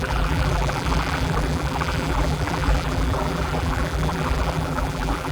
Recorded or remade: remade